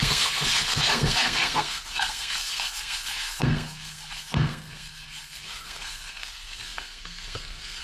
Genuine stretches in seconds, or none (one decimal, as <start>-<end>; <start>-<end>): none